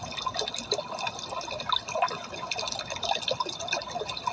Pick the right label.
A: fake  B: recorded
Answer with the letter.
B